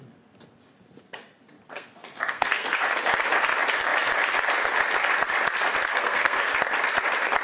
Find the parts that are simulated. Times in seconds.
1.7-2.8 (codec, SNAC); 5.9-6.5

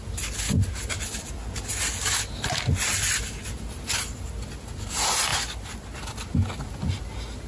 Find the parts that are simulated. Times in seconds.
none

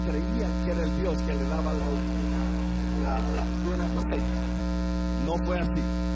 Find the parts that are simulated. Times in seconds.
1.8-4.6 (codec, SNAC)

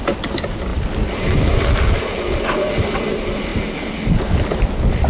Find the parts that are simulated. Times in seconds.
none

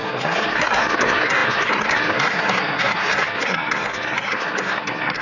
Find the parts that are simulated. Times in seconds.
0.0-5.2 (codec, SNAC)

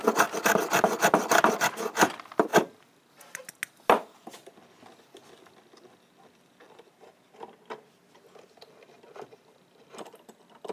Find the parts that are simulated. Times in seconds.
none